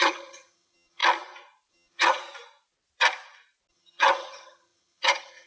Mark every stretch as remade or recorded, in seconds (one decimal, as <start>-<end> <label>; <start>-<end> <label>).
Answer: 0.0-1.0 remade; 1.0-1.7 recorded; 1.7-2.2 remade; 2.2-3.7 recorded; 3.7-5.5 remade